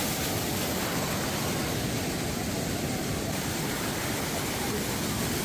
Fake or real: real